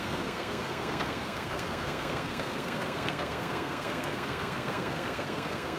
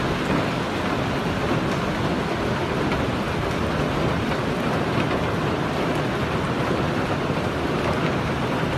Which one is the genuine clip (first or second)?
second